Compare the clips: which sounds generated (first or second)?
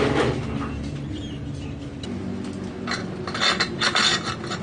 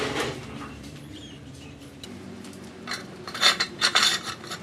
second